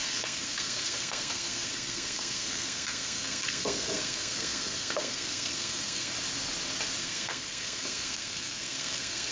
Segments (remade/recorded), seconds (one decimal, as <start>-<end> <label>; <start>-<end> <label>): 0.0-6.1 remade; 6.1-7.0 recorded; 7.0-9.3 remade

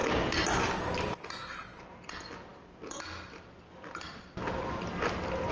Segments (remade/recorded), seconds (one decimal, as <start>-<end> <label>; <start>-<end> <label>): 0.0-5.5 recorded

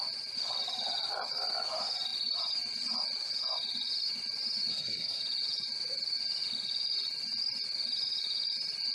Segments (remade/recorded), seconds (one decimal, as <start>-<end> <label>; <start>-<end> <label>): 0.0-4.7 recorded; 4.7-5.2 remade; 5.2-8.9 recorded

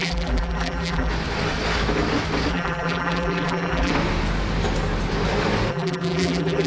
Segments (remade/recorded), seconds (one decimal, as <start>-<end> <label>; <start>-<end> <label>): 0.0-1.1 remade; 1.1-2.5 recorded; 2.5-3.9 remade; 3.9-5.7 recorded; 5.7-6.7 remade